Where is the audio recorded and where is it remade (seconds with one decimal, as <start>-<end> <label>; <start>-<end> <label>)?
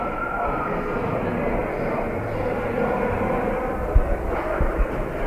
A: 0.0-1.6 recorded; 1.6-4.8 remade; 4.8-5.3 recorded